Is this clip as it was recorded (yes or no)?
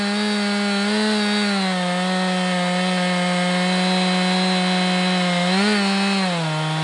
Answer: yes